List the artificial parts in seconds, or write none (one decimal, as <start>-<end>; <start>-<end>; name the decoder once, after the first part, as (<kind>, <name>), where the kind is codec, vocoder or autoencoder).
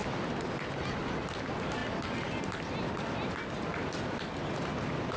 none